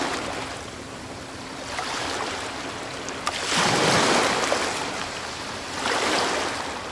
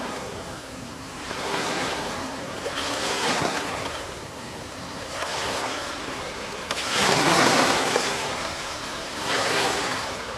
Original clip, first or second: first